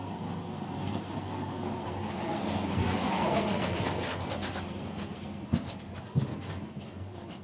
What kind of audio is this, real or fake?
fake